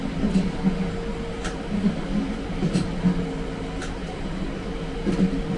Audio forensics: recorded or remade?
recorded